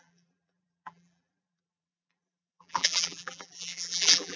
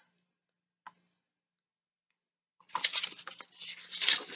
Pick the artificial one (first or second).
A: first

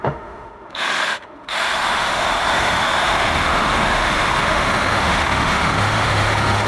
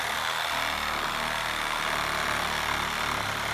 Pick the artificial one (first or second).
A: first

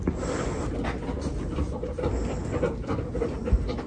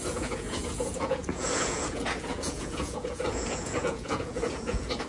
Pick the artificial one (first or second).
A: second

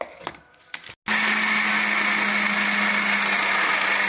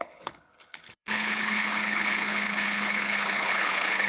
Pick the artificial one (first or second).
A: second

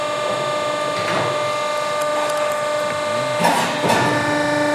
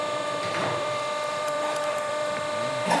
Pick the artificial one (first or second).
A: second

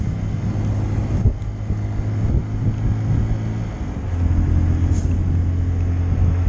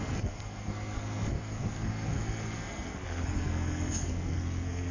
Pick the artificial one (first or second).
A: second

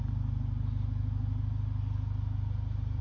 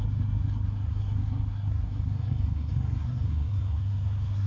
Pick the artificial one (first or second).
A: second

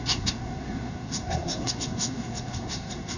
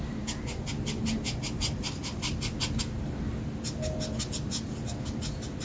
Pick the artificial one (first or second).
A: first